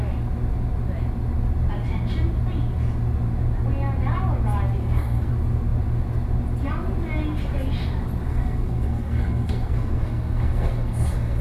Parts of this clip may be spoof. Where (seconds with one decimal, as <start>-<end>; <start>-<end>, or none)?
4.8-5.3; 8.3-11.4

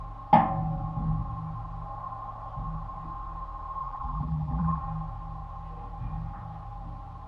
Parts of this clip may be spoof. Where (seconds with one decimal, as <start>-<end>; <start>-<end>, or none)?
3.8-4.8

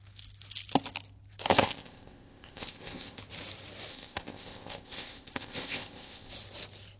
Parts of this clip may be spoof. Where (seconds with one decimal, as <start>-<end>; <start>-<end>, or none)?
1.5-3.2; 3.9-6.3